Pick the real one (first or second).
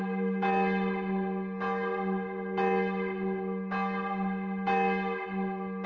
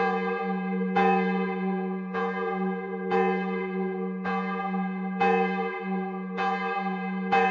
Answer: first